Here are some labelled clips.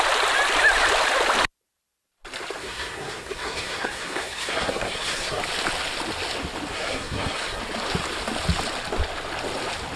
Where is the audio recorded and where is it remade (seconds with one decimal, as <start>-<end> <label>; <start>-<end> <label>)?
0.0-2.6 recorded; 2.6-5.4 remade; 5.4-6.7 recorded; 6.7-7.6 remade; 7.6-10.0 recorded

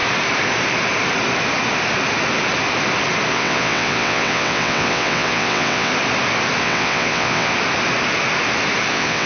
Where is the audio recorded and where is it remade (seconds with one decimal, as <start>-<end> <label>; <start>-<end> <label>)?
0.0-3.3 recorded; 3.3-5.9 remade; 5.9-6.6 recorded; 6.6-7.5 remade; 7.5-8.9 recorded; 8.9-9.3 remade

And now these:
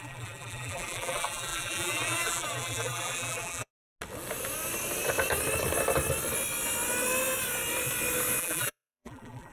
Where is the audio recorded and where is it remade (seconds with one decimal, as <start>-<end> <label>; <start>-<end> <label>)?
0.0-3.7 remade; 3.7-8.4 recorded; 8.4-9.5 remade

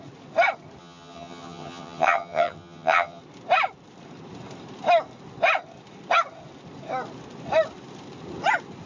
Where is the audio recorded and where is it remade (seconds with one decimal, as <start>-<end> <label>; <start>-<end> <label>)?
0.0-0.8 recorded; 0.8-3.2 remade; 3.2-8.9 recorded